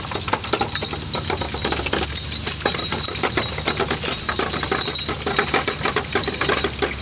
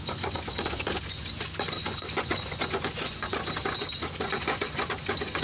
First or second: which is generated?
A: second